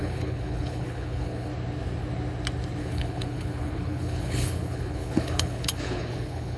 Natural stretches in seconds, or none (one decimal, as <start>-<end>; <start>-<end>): 1.5-2.8